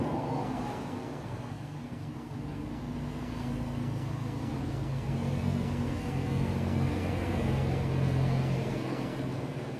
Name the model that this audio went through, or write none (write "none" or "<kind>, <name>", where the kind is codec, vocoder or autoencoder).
codec, SNAC